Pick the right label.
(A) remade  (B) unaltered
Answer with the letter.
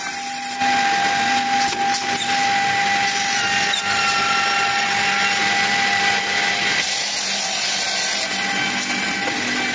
B